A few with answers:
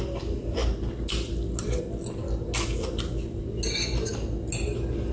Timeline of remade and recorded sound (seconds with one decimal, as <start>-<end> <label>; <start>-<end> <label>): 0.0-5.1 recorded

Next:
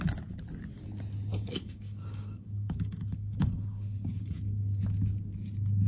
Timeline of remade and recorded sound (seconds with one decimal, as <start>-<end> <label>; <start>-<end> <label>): 0.0-1.3 recorded; 1.3-4.8 remade; 4.8-5.9 recorded

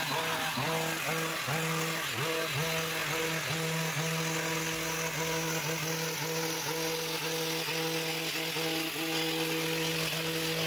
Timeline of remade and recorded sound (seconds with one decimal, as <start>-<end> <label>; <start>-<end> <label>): 0.0-10.7 recorded

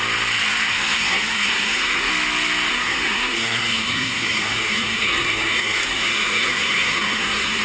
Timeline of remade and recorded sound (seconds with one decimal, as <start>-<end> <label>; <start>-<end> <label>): 0.0-0.7 recorded; 0.7-2.1 remade; 2.1-2.7 recorded; 2.7-7.6 remade